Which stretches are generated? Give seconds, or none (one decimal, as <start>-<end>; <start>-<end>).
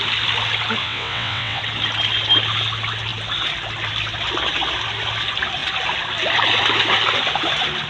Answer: 0.8-1.6